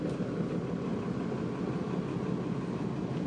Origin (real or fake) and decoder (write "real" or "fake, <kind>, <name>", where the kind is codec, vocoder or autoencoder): real